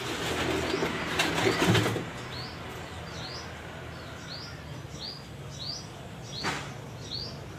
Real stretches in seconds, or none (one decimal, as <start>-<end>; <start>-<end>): 0.0-7.6